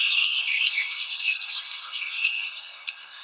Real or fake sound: fake